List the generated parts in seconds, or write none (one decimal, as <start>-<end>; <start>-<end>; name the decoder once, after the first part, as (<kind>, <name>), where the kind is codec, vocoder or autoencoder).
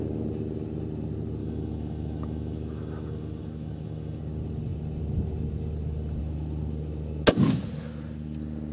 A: 1.4-4.2 (autoencoder, DAC-VAE)